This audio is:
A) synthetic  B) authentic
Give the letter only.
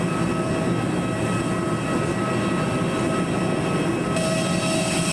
B